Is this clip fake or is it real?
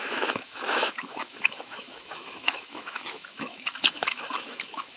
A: fake